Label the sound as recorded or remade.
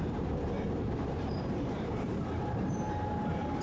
remade